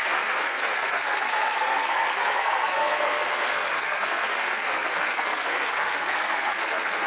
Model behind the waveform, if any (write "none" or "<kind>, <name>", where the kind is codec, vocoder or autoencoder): codec, SNAC